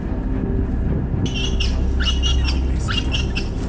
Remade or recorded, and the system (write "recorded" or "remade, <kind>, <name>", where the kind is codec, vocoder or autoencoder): recorded